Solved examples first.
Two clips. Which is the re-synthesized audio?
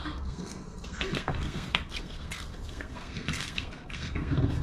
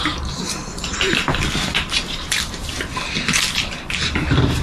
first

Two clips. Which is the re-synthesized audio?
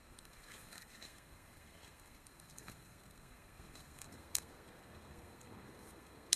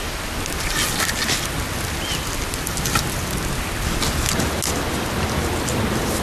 first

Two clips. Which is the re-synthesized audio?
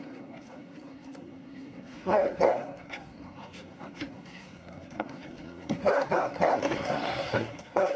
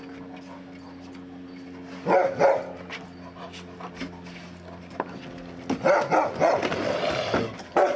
first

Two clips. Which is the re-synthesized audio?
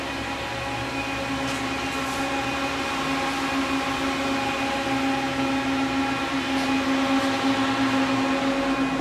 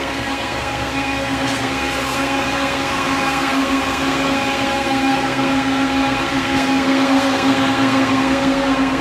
second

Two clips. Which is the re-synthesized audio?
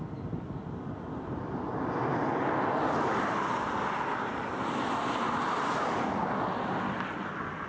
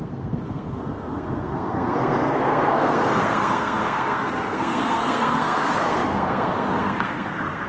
second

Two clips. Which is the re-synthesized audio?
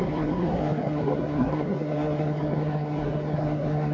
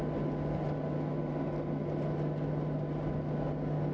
first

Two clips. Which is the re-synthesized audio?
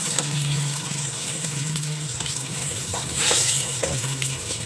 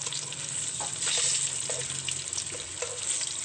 first